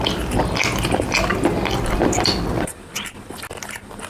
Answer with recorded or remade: recorded